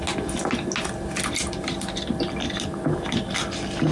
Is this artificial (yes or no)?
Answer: no